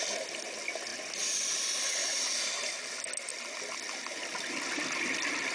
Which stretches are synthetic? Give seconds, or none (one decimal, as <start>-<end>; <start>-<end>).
none